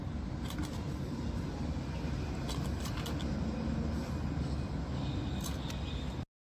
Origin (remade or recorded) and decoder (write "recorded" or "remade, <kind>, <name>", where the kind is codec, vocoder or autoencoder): recorded